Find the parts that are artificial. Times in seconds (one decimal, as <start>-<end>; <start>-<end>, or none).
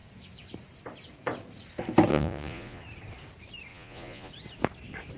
2.1-2.8; 3.7-4.3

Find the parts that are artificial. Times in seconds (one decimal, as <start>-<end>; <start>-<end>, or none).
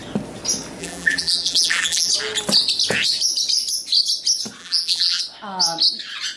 0.8-2.1; 4.6-5.2